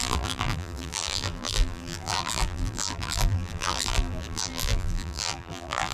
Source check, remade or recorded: remade